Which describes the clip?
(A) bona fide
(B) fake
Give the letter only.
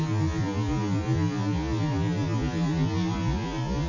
A